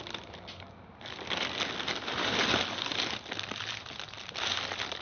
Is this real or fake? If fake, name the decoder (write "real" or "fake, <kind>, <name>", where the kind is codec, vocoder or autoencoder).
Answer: real